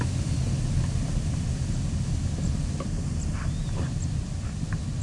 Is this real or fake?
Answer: real